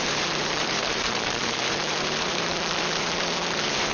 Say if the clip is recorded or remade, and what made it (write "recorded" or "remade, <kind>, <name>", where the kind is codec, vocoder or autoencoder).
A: remade, vocoder, BigVGAN v2